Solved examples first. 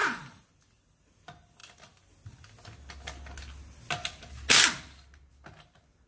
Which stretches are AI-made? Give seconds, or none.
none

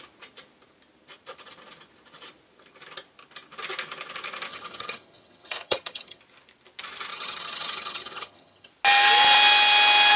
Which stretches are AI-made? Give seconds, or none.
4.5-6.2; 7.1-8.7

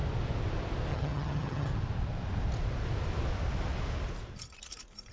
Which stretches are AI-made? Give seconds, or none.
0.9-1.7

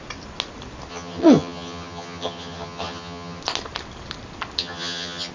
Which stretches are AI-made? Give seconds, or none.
0.9-3.4; 4.6-5.3

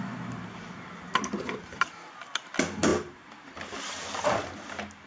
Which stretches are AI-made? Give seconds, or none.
none

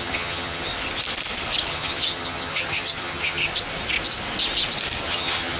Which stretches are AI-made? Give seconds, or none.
0.0-0.7; 1.7-3.5; 5.0-5.6

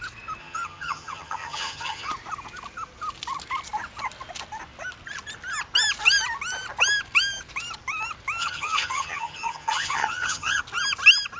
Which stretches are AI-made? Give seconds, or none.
0.4-2.1; 8.4-10.6

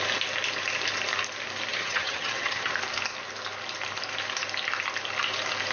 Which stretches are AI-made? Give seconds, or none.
1.7-2.7